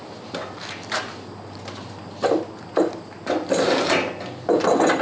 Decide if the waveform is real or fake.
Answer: real